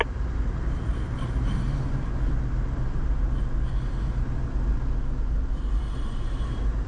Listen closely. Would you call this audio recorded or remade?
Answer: recorded